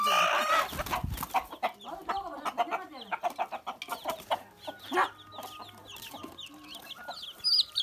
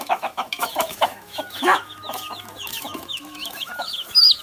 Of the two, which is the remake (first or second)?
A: second